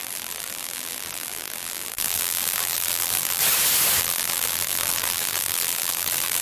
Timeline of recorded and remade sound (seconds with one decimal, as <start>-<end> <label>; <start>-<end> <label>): 0.0-3.4 remade; 3.4-4.0 recorded; 4.0-6.4 remade